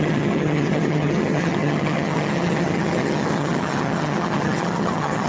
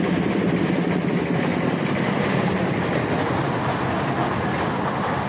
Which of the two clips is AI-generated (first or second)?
first